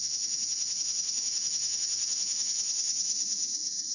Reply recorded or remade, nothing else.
remade